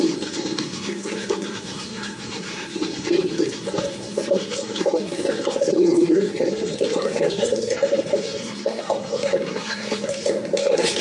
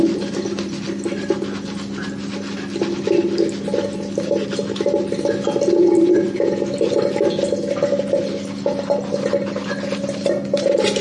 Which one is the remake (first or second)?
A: first